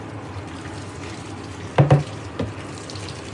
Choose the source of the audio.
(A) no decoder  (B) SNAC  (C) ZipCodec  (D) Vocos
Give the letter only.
A